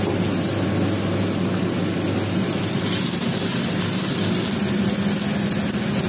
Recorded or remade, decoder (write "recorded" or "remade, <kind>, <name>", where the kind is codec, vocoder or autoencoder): recorded